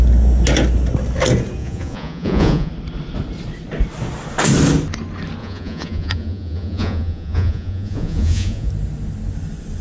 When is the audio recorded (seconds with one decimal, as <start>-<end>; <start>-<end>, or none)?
0.0-1.6; 2.7-5.4; 8.7-9.8